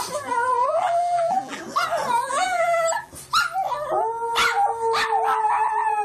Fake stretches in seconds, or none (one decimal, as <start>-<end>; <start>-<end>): 0.6-1.6; 2.2-3.1

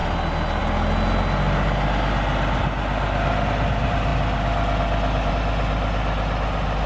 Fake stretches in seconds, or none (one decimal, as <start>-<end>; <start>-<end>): none

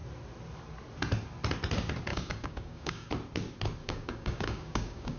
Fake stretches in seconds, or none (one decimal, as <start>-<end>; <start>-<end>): 2.1-3.1; 3.8-5.2

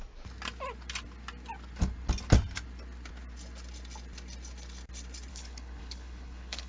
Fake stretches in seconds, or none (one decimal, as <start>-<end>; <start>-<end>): 5.3-6.7

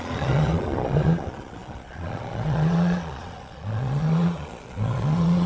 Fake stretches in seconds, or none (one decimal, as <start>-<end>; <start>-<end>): 0.0-5.5

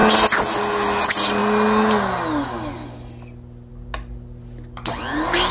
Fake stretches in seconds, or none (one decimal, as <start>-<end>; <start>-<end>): none

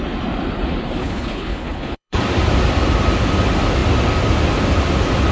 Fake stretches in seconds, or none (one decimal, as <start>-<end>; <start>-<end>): 1.0-2.2

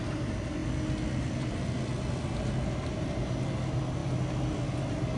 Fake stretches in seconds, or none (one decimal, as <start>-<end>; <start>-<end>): none